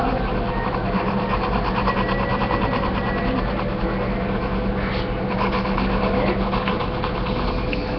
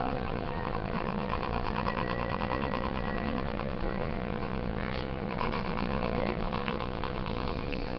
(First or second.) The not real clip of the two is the second